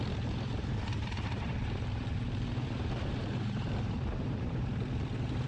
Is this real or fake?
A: fake